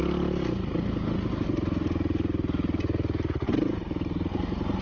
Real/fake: real